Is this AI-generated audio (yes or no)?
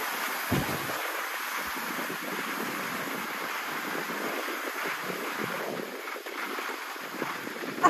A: no